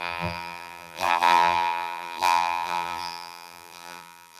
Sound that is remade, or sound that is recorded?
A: remade